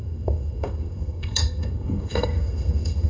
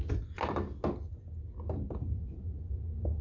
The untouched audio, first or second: second